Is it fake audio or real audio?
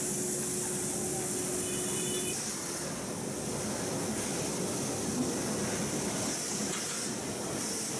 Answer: real